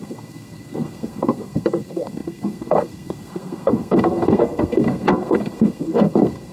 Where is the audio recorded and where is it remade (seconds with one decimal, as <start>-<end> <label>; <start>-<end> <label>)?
0.0-6.5 remade